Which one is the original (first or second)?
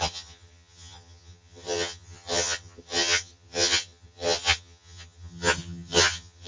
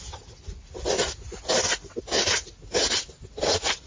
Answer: second